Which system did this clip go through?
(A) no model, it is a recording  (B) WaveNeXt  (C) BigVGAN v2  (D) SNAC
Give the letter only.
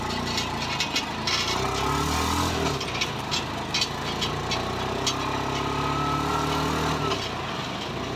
A